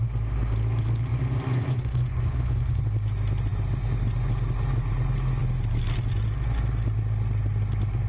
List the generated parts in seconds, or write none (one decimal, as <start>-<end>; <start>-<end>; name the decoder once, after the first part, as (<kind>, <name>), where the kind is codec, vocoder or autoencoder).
1.1-2.8 (vocoder, Vocos)

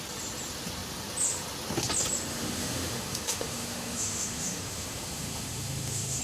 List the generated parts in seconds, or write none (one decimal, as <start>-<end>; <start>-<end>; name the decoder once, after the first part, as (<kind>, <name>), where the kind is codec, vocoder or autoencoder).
2.3-6.2 (autoencoder, DAC-VAE)

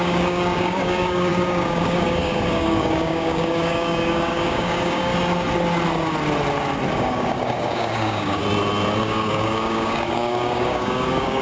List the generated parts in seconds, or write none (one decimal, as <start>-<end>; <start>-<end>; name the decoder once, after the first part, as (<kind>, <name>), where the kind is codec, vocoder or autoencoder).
0.0-5.1 (codec, DAC); 6.9-8.4; 9.0-11.4

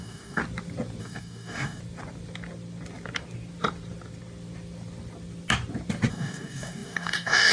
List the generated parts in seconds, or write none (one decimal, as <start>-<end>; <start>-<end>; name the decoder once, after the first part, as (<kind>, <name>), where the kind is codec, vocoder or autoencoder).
0.0-0.4 (codec, DAC); 1.0-1.8; 6.1-7.5